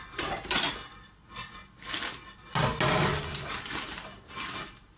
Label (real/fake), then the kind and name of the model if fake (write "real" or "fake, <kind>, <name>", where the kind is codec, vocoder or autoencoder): real